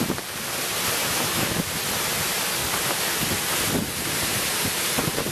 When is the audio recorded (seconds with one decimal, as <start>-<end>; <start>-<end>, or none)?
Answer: 0.0-1.0; 1.7-5.3